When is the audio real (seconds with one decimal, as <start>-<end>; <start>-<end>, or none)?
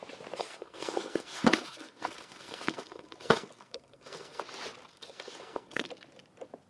0.0-0.4; 4.4-4.9; 5.9-6.7